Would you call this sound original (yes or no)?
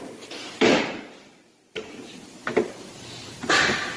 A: yes